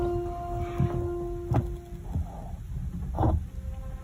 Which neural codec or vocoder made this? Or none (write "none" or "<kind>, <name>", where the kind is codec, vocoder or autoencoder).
none